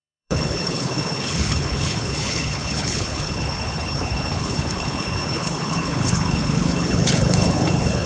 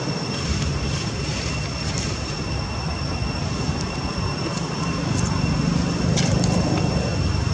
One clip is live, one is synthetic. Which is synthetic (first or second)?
first